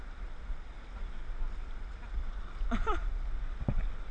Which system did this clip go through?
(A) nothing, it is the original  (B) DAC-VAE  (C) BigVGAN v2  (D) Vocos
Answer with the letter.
A